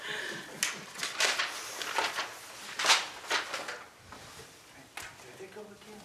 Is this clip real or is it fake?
real